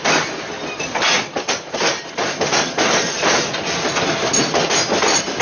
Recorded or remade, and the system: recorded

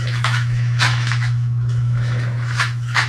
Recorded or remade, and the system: remade, autoencoder, DAC-VAE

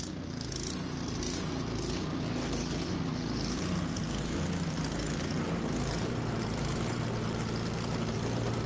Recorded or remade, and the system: recorded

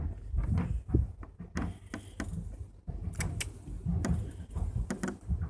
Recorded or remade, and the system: recorded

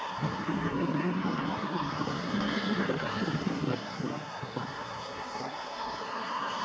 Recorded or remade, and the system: remade, codec, SNAC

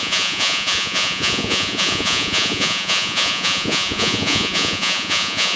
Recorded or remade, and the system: remade, vocoder, Vocos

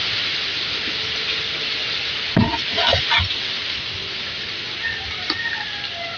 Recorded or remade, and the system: recorded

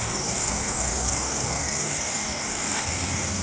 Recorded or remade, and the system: remade, codec, DAC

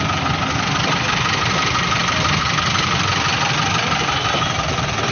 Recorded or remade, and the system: recorded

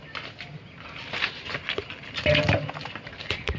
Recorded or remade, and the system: recorded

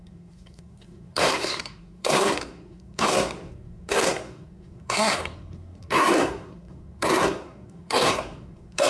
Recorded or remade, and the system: remade, codec, SNAC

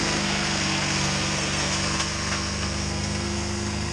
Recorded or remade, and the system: remade, codec, SNAC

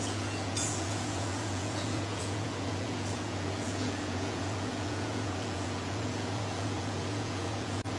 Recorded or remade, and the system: remade, vocoder, Vocos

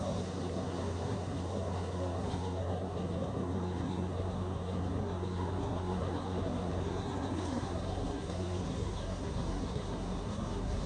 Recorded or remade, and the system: remade, codec, SNAC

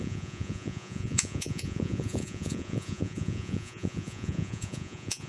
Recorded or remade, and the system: remade, vocoder, Vocos